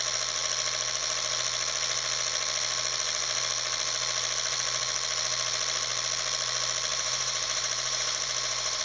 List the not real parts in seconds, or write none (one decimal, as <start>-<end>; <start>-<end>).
6.9-8.8